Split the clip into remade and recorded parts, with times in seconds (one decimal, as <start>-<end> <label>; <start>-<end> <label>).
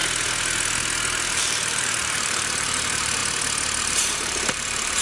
0.0-1.2 recorded; 1.2-3.2 remade; 3.2-3.8 recorded; 3.8-5.0 remade